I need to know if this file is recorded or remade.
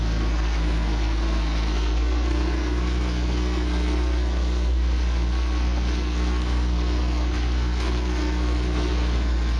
remade